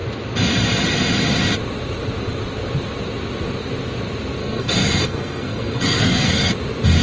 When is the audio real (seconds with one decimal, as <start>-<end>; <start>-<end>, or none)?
0.0-4.4; 6.5-7.0